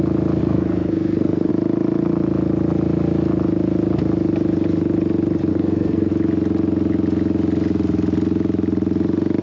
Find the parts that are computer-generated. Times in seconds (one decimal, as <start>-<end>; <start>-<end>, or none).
0.4-1.5; 5.5-6.1